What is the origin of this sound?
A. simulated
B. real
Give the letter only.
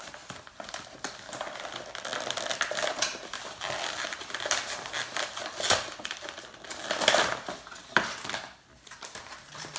B